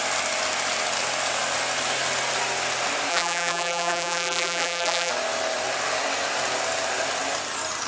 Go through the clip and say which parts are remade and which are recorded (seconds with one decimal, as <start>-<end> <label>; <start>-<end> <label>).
0.0-3.1 recorded; 3.1-5.1 remade; 5.1-7.9 recorded